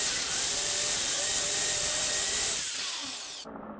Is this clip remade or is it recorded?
recorded